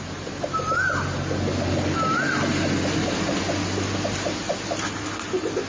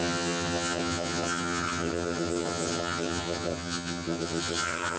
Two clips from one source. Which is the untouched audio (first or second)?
first